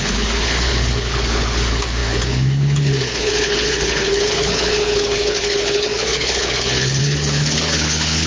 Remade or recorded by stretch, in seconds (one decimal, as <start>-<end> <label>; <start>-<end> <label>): 0.0-8.3 remade